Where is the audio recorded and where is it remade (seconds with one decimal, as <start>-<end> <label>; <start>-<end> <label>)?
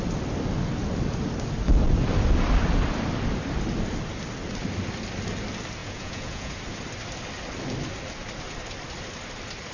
0.0-5.8 recorded; 5.8-6.6 remade; 6.6-9.7 recorded